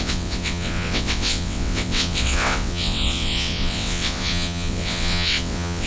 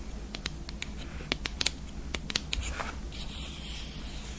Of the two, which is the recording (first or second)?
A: second